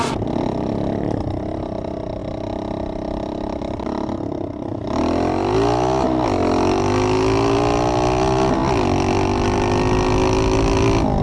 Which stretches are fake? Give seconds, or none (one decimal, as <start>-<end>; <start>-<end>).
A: none